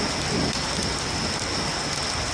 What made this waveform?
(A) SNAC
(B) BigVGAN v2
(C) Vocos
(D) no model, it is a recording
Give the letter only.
D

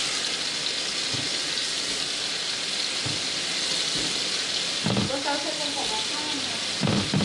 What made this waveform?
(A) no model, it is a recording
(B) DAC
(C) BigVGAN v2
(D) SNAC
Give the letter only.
A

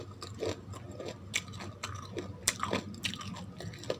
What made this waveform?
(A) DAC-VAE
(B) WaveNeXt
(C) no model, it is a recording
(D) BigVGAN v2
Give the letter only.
C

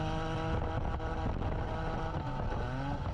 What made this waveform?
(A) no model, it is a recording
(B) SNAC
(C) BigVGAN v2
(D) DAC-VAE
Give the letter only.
A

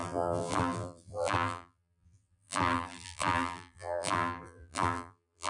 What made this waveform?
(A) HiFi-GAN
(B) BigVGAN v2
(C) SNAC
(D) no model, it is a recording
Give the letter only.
B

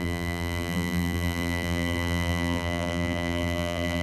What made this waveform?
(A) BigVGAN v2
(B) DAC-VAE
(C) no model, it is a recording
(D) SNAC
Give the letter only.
A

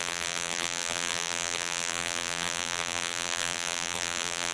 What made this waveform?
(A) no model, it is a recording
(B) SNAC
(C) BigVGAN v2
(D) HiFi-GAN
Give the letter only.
C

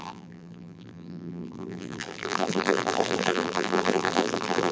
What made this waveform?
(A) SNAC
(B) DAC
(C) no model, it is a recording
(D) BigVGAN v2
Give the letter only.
D